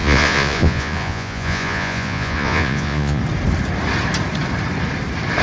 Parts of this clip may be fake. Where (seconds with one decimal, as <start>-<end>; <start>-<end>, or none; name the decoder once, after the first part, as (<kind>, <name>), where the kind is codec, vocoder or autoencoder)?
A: 0.0-3.2 (vocoder, Vocos)